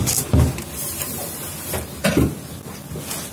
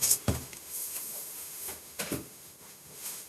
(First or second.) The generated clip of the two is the second